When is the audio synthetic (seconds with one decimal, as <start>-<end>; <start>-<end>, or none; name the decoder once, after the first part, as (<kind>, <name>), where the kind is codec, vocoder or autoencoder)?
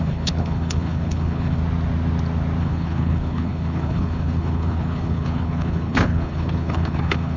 0.0-1.6 (codec, HILCodec); 2.6-7.4